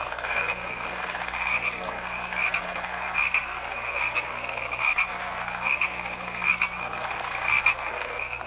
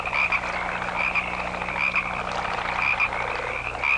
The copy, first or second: first